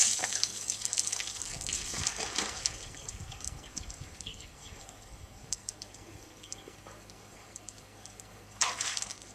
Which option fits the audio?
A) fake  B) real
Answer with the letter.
A